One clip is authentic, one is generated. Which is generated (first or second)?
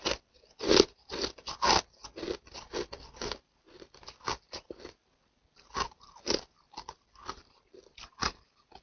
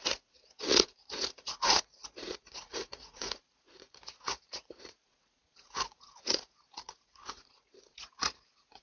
second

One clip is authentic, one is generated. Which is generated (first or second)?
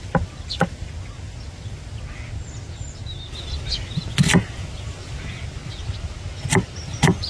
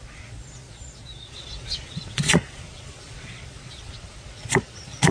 second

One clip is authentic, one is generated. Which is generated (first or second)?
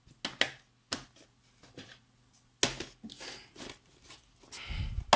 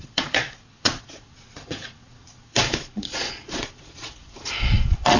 second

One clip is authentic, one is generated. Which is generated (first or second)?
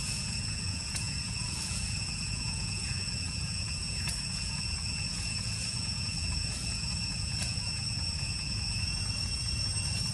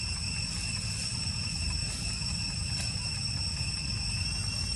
first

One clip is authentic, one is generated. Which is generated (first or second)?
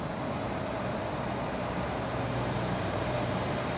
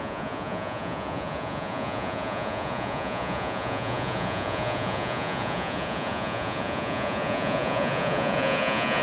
second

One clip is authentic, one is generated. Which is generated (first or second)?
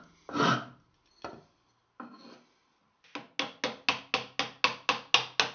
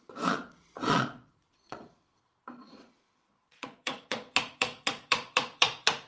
second